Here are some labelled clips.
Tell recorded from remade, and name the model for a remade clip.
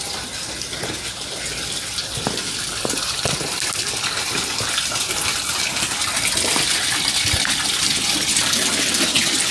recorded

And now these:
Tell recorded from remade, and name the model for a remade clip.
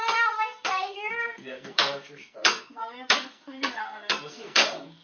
remade, codec, SNAC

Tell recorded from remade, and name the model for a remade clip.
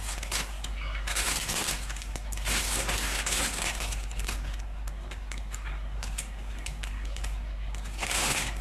remade, codec, SNAC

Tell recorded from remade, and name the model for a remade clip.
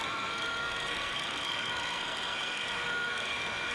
remade, codec, SNAC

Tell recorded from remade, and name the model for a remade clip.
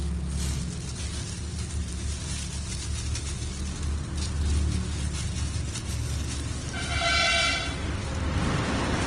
recorded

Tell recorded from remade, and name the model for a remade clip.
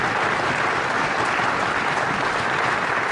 recorded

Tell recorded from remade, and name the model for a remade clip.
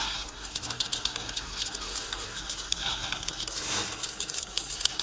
remade, codec, SNAC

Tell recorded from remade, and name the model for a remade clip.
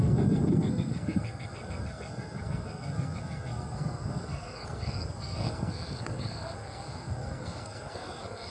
remade, codec, SNAC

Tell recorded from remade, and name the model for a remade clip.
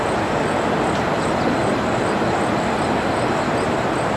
recorded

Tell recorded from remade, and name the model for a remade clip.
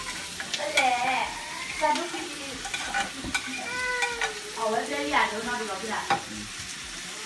recorded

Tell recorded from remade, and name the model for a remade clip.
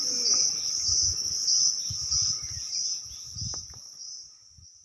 recorded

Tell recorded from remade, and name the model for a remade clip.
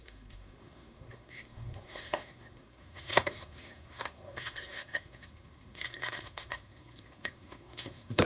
remade, codec, SNAC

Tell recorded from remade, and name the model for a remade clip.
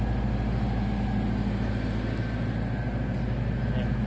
recorded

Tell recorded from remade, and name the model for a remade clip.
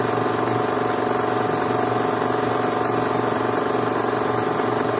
recorded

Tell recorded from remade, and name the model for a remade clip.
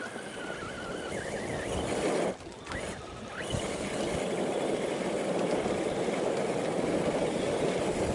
recorded